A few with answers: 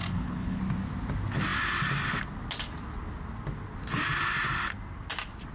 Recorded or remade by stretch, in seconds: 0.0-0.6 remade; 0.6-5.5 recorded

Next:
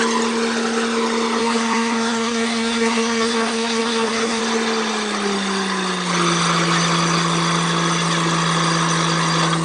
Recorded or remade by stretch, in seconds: 0.0-1.4 recorded; 1.4-4.4 remade; 4.4-9.6 recorded

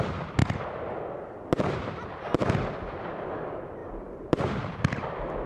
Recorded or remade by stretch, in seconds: 0.0-0.4 remade; 0.4-2.5 recorded; 2.5-5.5 remade

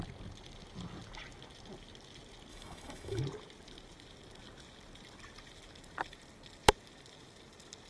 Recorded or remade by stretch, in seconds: 0.0-2.5 recorded; 2.5-3.2 remade; 3.2-7.9 recorded